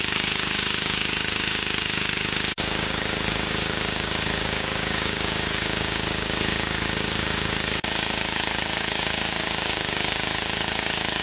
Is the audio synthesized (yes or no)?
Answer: yes